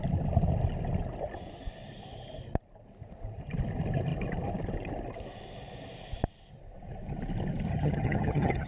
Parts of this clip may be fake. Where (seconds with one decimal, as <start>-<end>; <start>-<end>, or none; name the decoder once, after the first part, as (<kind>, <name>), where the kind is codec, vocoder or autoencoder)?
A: 7.7-8.7 (vocoder, HiFi-GAN)